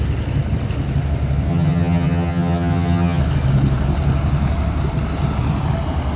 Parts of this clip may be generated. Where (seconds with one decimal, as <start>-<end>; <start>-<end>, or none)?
1.5-3.2